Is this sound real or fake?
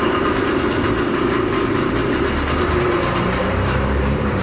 fake